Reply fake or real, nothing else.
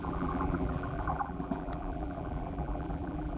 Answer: fake